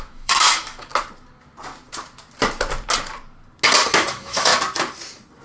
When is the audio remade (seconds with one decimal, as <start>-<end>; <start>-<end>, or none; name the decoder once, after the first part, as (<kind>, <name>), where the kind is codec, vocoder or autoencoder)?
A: 0.0-0.9 (autoencoder, DAC-VAE); 4.1-4.5